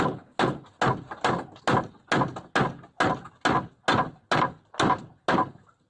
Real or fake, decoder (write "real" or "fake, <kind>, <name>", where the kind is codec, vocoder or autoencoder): real